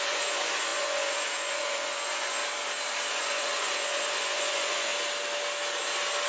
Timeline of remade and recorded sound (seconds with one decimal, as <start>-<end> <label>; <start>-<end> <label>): 0.0-2.4 remade; 2.4-3.1 recorded; 3.1-4.9 remade; 4.9-6.3 recorded